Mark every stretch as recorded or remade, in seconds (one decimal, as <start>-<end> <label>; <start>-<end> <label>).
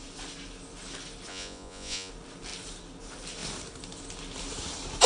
0.0-1.3 recorded; 1.3-2.1 remade; 2.1-5.1 recorded